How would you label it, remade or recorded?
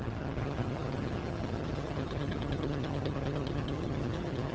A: remade